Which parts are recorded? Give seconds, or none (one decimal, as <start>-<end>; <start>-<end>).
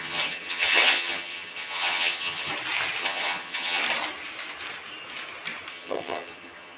2.5-3.0; 3.8-5.7